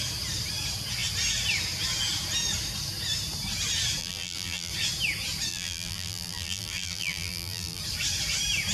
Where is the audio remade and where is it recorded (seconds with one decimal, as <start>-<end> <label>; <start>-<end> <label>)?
0.0-4.0 recorded; 4.0-4.7 remade; 4.7-5.5 recorded; 5.5-7.8 remade; 7.8-8.7 recorded